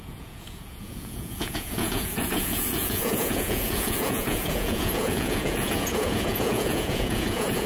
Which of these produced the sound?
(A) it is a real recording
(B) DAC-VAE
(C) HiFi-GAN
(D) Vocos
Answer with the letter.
D